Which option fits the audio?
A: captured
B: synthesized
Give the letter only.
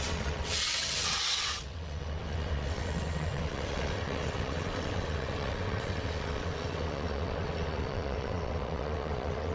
B